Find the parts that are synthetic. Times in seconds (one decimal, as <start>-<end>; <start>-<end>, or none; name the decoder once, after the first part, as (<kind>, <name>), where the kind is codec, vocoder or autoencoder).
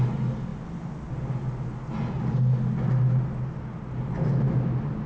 none